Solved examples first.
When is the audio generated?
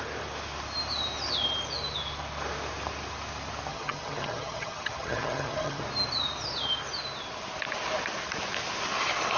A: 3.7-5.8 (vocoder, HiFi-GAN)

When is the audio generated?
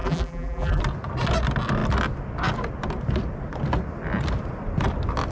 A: 0.0-0.8 (vocoder, BigVGAN v2)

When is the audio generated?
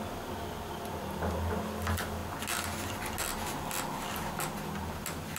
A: none